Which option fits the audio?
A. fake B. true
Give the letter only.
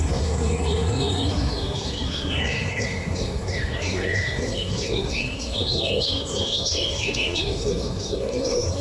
A